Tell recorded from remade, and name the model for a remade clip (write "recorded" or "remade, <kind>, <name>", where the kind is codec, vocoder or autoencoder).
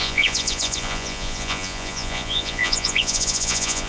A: remade, vocoder, Vocos